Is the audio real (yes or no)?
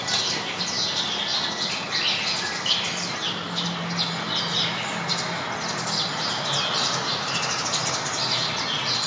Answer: yes